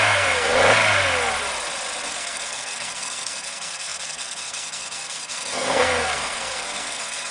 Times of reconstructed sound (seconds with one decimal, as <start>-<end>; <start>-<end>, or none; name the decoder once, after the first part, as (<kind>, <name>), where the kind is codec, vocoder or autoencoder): 0.0-0.5 (codec, SNAC); 2.1-7.3